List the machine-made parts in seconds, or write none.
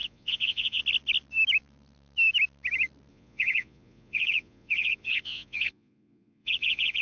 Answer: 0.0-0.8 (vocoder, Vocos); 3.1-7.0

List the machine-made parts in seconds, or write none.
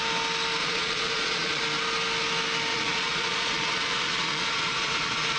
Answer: 0.6-1.6 (vocoder, Vocos); 2.7-5.4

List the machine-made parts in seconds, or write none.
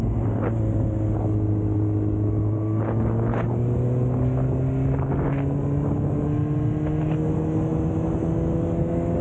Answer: none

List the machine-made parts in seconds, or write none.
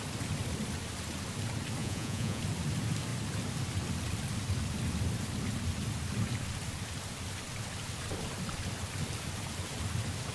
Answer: 1.8-2.4 (vocoder, Vocos)